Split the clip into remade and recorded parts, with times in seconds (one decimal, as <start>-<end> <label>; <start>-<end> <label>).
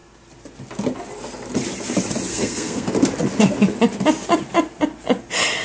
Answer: 0.0-2.3 recorded; 2.3-2.9 remade; 2.9-5.6 recorded